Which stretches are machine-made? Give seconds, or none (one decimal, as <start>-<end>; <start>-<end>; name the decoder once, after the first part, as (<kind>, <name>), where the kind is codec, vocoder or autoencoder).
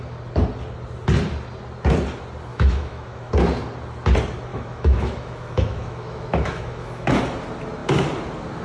2.5-3.3 (autoencoder, DAC-VAE); 4.5-7.2